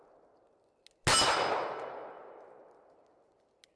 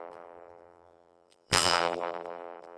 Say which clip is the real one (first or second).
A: first